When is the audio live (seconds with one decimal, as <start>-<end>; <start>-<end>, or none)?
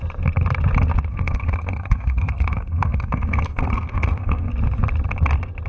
0.0-1.1; 4.5-5.7